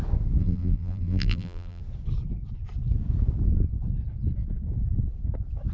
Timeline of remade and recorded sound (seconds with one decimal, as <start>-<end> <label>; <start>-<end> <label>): 0.0-0.4 recorded; 0.4-1.8 remade; 1.8-5.7 recorded